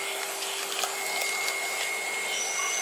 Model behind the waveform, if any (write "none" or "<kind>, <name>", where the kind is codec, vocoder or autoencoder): none